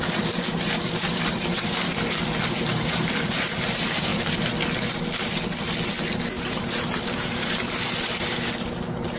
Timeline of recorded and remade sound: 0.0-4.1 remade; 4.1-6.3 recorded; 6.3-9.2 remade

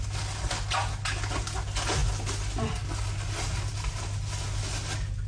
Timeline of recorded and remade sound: 0.0-5.3 recorded

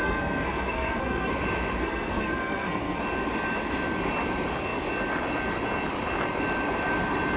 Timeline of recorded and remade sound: 0.0-1.3 remade; 1.3-1.8 recorded; 1.8-3.0 remade; 3.0-7.4 recorded

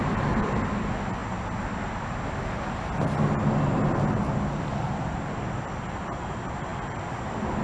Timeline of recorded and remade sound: 0.0-7.6 recorded

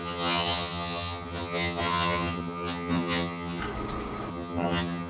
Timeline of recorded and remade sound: 0.0-3.6 remade; 3.6-4.3 recorded; 4.3-5.1 remade

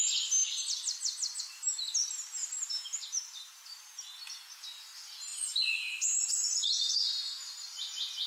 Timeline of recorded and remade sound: 0.0-2.4 recorded; 2.4-4.2 remade; 4.2-8.3 recorded

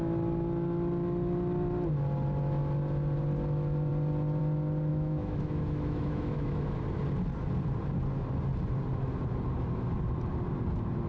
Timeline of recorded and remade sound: 0.0-4.9 recorded; 4.9-6.7 remade; 6.7-11.1 recorded

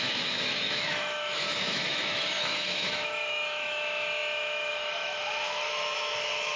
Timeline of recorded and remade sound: 0.0-6.6 remade